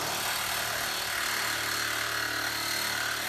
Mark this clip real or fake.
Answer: real